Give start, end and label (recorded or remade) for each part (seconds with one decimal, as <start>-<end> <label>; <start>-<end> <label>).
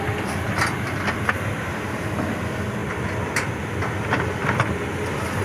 0.0-5.4 remade